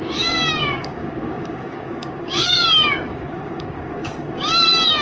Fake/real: fake